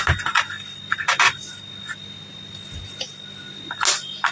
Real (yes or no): yes